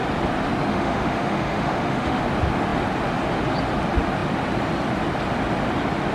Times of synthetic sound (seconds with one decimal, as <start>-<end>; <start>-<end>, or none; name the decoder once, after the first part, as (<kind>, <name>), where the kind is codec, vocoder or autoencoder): 0.7-2.2 (autoencoder, DAC-VAE)